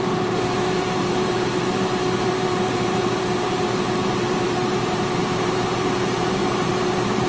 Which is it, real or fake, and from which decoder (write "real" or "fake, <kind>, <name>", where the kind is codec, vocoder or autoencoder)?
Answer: fake, vocoder, BigVGAN v2